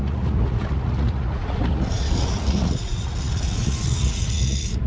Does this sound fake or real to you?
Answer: fake